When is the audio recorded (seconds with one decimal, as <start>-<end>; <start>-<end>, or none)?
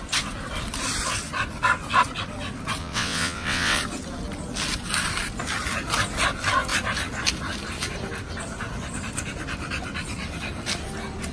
0.0-2.8; 3.8-11.3